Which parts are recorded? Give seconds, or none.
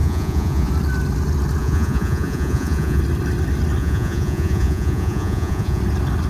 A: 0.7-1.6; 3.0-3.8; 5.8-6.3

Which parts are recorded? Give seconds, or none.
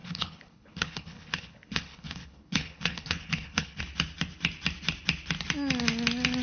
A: 3.8-6.4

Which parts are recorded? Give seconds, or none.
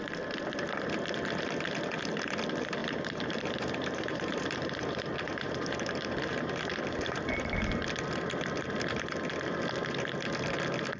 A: 0.0-2.8; 7.6-11.0